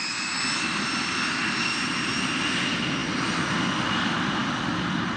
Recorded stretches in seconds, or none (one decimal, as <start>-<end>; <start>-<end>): 0.0-5.2